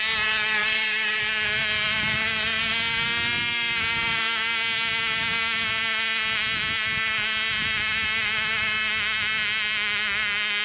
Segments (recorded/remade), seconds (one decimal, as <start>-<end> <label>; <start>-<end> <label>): 0.0-0.6 recorded; 0.6-1.2 remade; 1.2-10.6 recorded